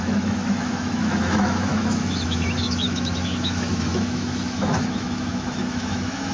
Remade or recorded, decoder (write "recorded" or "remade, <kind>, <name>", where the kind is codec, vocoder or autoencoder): remade, autoencoder, DAC-VAE